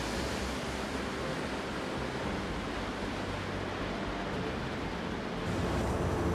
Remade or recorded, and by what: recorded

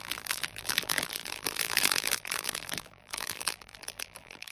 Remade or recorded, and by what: remade, vocoder, BigVGAN v2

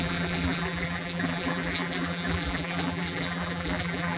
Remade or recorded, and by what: remade, vocoder, BigVGAN v2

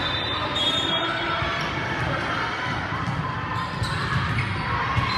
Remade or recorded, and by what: remade, vocoder, BigVGAN v2